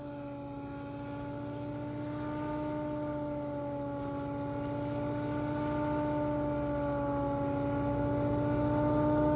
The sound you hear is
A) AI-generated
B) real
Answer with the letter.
B